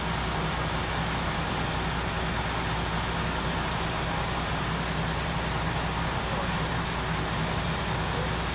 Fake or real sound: real